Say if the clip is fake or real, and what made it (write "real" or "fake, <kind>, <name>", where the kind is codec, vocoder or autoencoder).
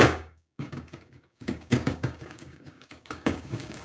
fake, codec, DAC